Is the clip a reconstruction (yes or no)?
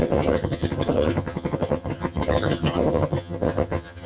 yes